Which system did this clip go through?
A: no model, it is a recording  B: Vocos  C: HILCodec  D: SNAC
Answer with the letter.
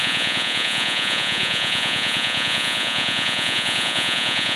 B